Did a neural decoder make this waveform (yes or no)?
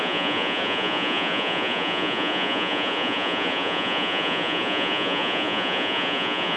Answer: yes